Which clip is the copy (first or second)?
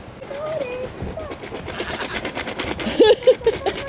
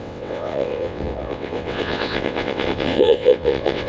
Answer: second